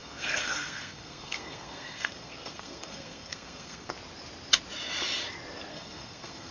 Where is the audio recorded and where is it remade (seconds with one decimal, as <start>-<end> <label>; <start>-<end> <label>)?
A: 0.0-3.9 remade; 3.9-5.7 recorded; 5.7-6.5 remade